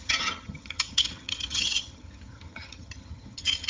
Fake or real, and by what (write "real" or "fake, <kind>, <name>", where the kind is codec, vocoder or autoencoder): fake, vocoder, HiFi-GAN